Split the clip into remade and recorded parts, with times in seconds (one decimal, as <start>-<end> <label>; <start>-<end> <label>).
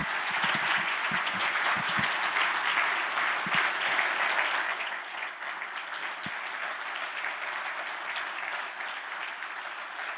0.0-2.1 remade; 2.1-4.7 recorded; 4.7-5.3 remade; 5.3-10.2 recorded